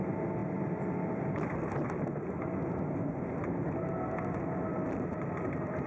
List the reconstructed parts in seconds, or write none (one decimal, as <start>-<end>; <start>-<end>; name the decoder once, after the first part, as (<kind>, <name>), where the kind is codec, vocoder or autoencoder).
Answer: none